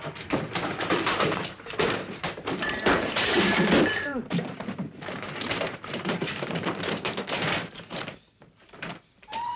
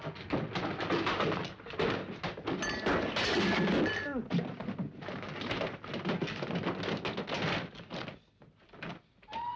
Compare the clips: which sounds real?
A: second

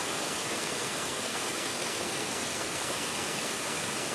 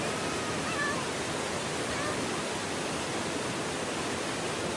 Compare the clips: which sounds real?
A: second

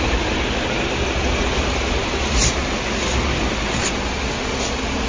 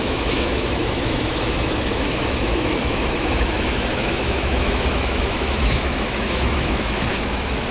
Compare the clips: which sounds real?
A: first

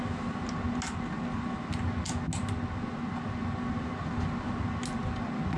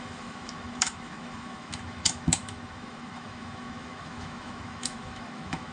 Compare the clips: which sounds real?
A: first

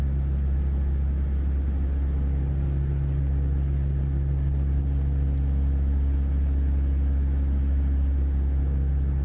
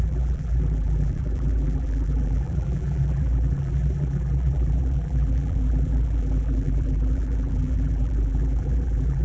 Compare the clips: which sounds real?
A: first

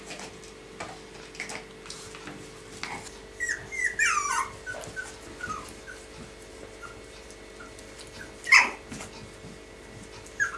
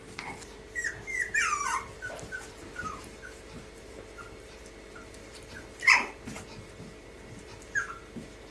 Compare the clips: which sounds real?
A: first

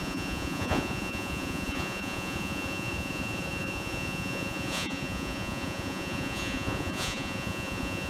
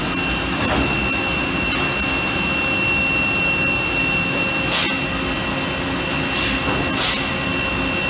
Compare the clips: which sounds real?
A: second